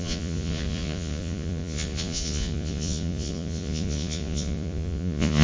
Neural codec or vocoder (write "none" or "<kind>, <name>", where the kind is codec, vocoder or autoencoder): vocoder, Vocos